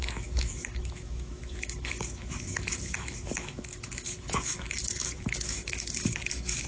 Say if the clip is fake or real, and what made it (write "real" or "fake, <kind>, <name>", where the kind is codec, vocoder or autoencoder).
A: fake, autoencoder, DAC-VAE